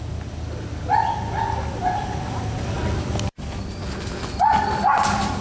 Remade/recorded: recorded